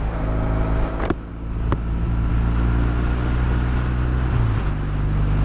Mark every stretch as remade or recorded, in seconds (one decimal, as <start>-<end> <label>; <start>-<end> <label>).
0.0-5.4 recorded